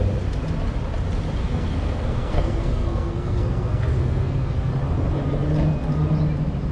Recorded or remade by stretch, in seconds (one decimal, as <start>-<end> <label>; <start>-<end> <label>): 0.0-1.4 recorded; 1.4-4.7 remade; 4.7-6.7 recorded